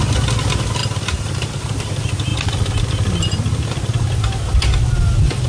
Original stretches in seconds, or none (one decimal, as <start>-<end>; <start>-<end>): 0.0-0.8; 1.6-5.5